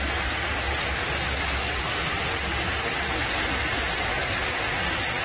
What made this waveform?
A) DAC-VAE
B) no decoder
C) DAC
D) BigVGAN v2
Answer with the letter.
B